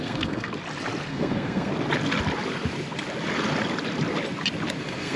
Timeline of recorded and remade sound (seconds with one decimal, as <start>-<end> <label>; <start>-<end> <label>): 0.0-0.5 remade; 0.5-1.1 recorded; 1.1-1.7 remade; 1.7-4.8 recorded; 4.8-5.2 remade